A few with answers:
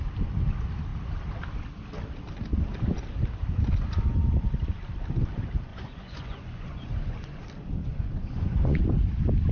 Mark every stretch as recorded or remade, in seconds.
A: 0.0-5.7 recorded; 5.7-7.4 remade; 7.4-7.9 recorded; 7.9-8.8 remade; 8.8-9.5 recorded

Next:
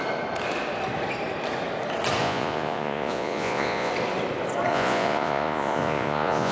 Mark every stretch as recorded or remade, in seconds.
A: 0.0-2.2 recorded; 2.2-3.9 remade; 3.9-4.7 recorded; 4.7-6.5 remade

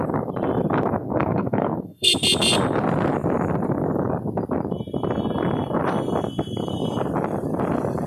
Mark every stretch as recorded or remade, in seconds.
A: 0.0-1.1 recorded; 1.1-2.1 remade; 2.1-8.1 recorded

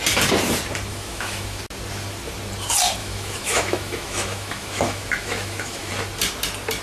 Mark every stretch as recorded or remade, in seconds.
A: 0.0-0.9 recorded; 0.9-1.6 remade; 1.6-3.0 recorded; 3.0-5.9 remade; 5.9-6.8 recorded

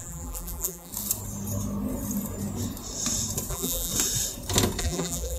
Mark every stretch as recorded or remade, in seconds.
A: 0.0-0.9 remade; 0.9-3.5 recorded; 3.5-3.9 remade; 3.9-4.8 recorded; 4.8-5.4 remade

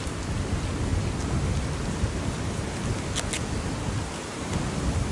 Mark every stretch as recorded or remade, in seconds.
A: 0.0-5.1 recorded

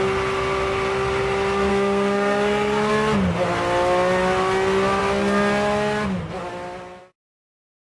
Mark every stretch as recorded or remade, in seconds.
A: 0.0-1.7 recorded; 1.7-2.9 remade; 2.9-7.9 recorded

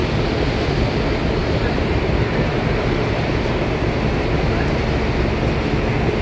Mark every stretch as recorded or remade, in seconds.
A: 0.0-1.4 recorded; 1.4-5.1 remade; 5.1-6.2 recorded